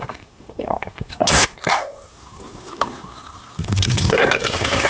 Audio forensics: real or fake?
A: fake